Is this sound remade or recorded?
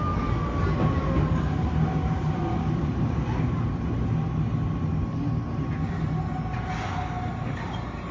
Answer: recorded